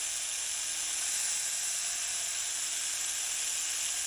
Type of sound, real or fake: real